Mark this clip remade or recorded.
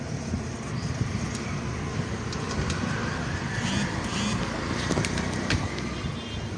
remade